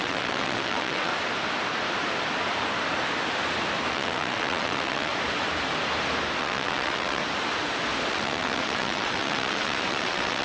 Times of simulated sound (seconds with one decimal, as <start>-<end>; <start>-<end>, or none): 0.0-1.1; 3.9-5.1; 6.4-7.2; 8.1-10.4

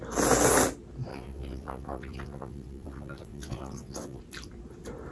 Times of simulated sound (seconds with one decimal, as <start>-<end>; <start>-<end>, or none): 1.1-4.2

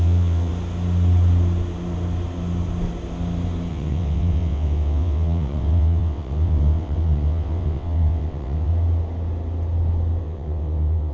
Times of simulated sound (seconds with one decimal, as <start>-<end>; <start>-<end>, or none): 0.0-0.5; 3.7-8.7; 10.2-11.1